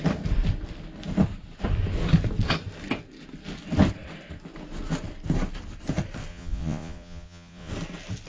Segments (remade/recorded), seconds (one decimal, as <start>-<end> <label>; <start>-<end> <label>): 0.0-6.3 recorded; 6.3-7.7 remade; 7.7-8.3 recorded